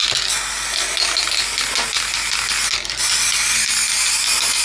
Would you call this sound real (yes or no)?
yes